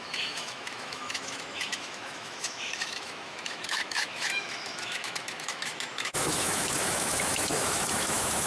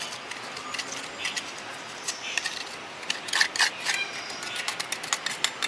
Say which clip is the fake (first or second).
first